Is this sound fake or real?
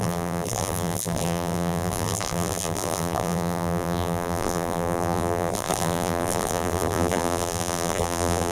fake